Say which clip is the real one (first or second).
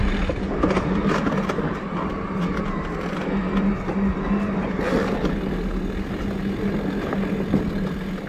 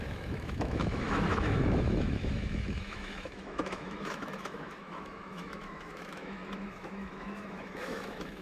first